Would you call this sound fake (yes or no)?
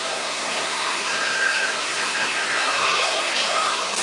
yes